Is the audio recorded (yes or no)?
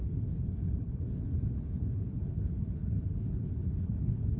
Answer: no